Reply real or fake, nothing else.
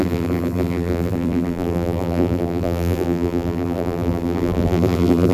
fake